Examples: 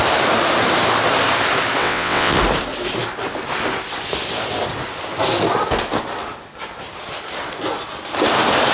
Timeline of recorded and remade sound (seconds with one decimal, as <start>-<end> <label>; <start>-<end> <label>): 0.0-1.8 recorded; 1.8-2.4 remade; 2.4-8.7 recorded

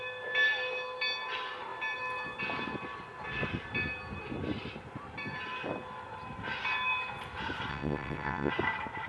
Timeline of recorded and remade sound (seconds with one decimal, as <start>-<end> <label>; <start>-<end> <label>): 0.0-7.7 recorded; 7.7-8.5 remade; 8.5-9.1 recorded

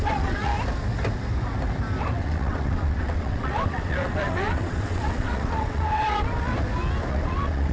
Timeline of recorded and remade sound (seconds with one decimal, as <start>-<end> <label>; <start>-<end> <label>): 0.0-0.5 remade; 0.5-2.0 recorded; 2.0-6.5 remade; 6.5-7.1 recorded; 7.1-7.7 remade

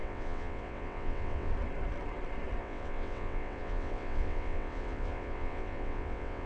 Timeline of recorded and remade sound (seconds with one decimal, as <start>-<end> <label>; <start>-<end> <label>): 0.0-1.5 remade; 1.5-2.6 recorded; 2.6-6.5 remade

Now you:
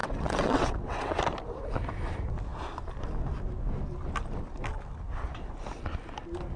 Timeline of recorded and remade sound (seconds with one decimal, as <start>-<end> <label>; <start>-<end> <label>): 0.0-1.1 remade; 1.1-6.6 recorded

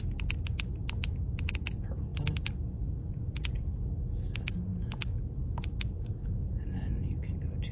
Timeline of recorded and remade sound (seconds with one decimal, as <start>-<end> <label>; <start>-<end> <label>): 0.0-7.7 recorded